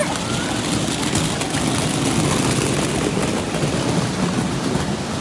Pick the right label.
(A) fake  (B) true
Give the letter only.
B